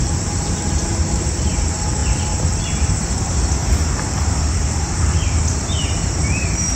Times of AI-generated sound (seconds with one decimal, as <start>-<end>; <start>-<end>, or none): 0.0-6.8